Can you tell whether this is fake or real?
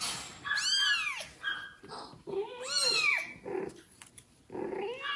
real